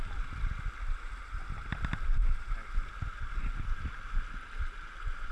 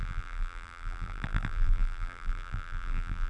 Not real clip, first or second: second